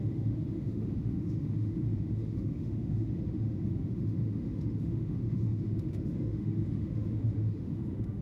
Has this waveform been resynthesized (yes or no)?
yes